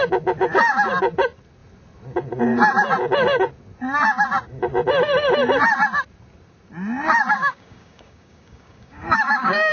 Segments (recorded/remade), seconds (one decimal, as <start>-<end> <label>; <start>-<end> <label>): 0.0-7.3 recorded; 7.3-9.7 remade